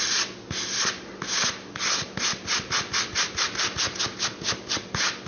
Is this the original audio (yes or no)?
yes